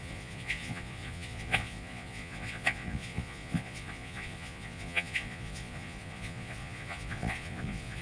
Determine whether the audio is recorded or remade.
remade